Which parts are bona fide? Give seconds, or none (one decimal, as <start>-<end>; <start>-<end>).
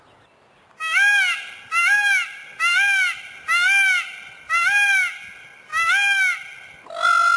0.0-7.4